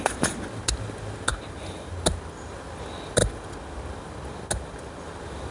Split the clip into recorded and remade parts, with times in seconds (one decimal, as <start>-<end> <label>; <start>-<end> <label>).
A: 0.0-5.5 recorded